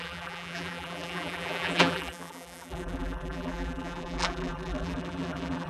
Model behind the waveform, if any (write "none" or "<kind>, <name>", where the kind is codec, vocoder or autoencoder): vocoder, BigVGAN v2